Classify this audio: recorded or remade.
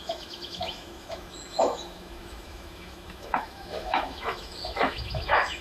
remade